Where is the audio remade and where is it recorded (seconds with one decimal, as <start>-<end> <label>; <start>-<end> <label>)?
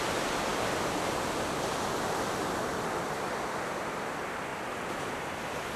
0.0-5.8 recorded